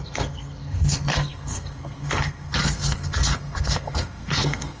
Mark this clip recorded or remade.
remade